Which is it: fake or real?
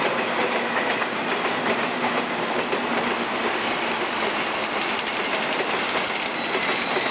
real